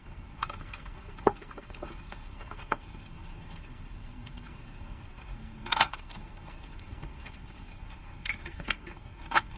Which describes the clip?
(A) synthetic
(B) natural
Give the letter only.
A